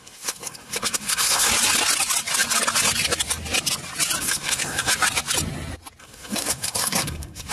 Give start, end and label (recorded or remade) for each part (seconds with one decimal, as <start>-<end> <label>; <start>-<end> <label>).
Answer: 0.0-1.5 remade; 1.5-4.2 recorded; 4.2-4.9 remade; 4.9-6.0 recorded; 6.0-7.5 remade